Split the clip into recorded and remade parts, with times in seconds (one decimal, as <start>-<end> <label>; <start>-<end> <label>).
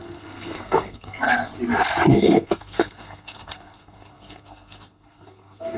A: 0.0-1.5 remade; 1.5-2.1 recorded; 2.1-5.8 remade